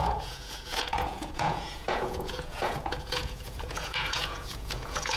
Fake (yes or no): yes